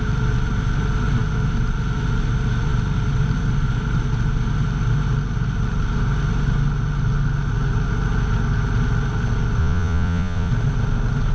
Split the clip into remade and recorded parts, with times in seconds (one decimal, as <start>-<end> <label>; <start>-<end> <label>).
0.0-9.6 recorded; 9.6-10.5 remade; 10.5-11.3 recorded